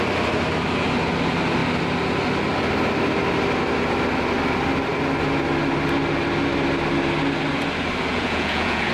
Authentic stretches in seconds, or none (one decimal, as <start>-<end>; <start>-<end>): 0.0-8.1